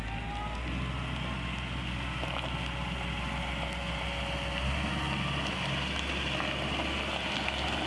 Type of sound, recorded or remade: recorded